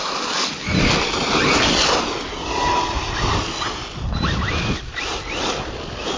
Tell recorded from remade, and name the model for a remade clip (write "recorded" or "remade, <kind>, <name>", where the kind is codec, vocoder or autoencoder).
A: recorded